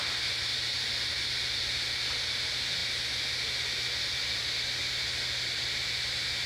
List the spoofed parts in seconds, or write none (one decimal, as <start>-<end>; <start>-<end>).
none